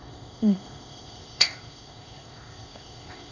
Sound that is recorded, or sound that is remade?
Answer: remade